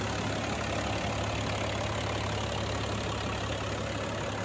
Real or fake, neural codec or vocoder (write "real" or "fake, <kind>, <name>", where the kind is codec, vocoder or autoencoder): real